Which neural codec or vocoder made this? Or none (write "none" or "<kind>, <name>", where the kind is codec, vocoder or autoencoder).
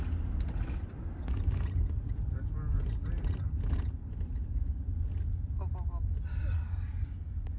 none